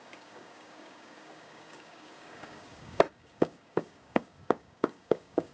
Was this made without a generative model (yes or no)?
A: no